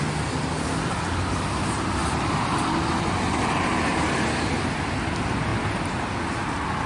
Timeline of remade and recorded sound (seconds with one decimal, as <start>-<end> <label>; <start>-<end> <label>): 0.0-6.9 recorded